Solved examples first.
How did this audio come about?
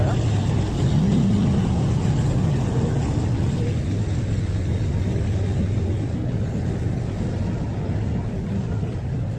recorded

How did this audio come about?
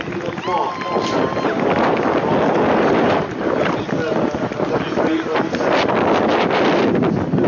recorded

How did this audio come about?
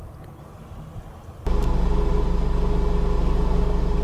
recorded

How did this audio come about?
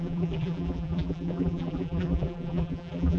remade